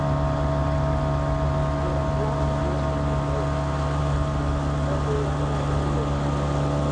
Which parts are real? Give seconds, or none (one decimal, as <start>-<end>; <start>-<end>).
0.0-6.9